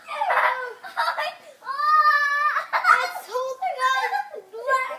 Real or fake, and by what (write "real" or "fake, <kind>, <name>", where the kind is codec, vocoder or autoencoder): real